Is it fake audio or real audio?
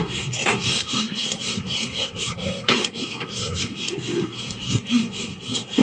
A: fake